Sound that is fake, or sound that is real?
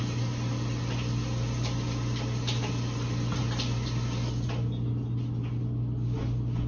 real